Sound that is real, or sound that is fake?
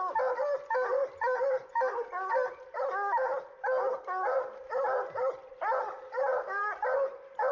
real